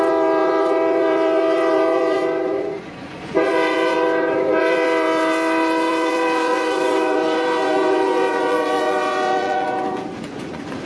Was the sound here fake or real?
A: fake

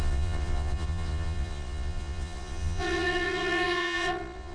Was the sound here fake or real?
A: fake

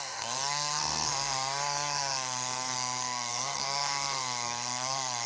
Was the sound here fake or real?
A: fake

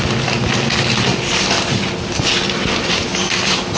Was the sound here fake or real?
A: real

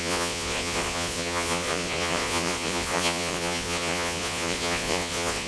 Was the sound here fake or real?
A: fake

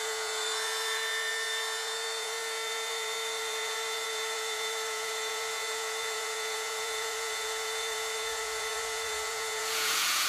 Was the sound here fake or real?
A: fake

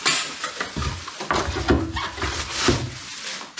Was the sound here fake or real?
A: real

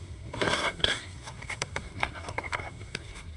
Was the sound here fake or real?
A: fake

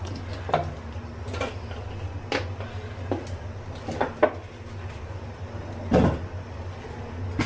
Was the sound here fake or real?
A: real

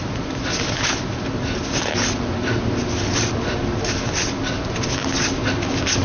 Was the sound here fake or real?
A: real